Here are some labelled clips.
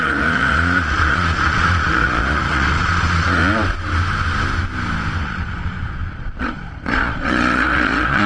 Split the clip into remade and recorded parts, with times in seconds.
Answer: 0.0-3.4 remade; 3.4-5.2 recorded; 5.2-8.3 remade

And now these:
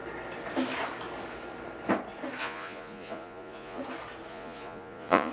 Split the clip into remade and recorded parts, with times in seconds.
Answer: 0.0-2.4 recorded; 2.4-3.8 remade; 3.8-4.3 recorded; 4.3-5.3 remade

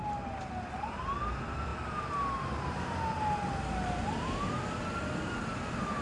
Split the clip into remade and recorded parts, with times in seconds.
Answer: 0.0-6.0 recorded

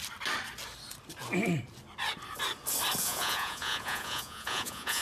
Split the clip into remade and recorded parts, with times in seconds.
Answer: 0.0-3.0 recorded; 3.0-5.0 remade